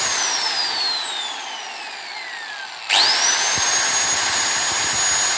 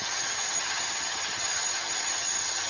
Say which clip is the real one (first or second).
first